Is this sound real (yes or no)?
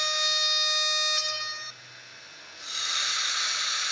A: yes